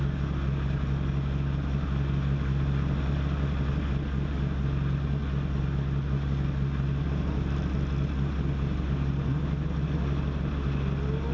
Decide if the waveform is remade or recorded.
recorded